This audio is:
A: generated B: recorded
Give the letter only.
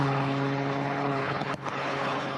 A